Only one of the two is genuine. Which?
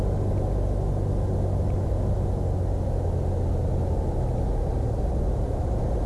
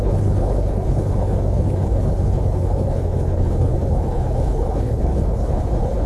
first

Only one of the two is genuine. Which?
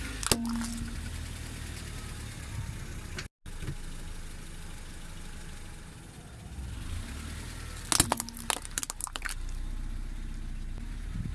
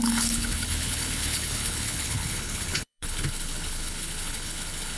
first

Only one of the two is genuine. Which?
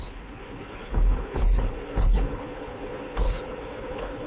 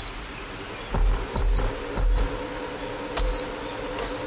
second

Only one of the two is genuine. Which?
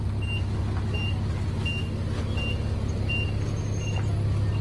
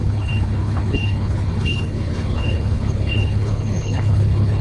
first